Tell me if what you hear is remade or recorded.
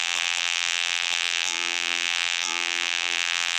remade